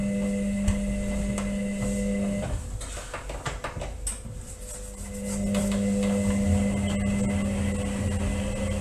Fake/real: real